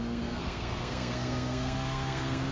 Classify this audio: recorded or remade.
remade